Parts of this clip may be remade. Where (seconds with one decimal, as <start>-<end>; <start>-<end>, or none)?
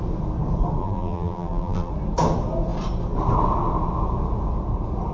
0.8-1.9